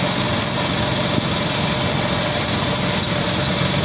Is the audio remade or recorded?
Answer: recorded